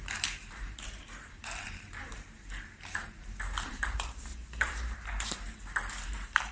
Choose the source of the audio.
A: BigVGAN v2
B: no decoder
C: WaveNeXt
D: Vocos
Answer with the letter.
A